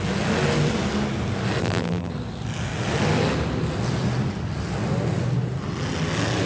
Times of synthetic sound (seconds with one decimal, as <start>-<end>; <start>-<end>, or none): 1.6-2.1